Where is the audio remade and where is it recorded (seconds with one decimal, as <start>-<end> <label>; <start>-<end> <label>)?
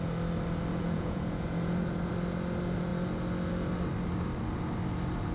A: 0.0-0.7 recorded; 0.7-1.9 remade; 1.9-5.3 recorded